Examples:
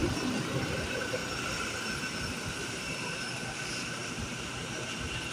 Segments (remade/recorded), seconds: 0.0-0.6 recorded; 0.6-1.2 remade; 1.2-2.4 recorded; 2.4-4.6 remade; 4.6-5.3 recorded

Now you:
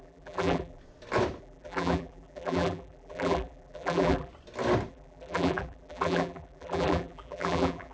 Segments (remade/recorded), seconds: 0.0-0.8 remade; 0.8-1.4 recorded; 1.4-4.3 remade; 4.3-4.9 recorded; 4.9-7.9 remade

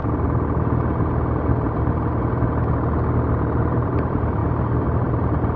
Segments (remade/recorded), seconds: 0.0-3.4 recorded; 3.4-4.4 remade; 4.4-5.1 recorded; 5.1-5.6 remade

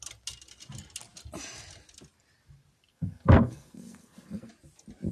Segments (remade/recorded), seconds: 0.0-2.9 recorded; 2.9-4.5 remade; 4.5-5.1 recorded